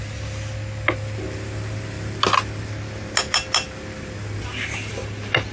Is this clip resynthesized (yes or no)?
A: no